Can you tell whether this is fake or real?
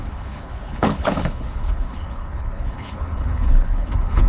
fake